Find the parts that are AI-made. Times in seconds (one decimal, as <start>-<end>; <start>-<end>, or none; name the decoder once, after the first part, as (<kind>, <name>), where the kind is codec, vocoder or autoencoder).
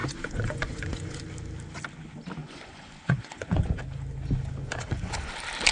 0.0-1.2 (vocoder, Vocos); 2.4-3.8; 4.6-5.3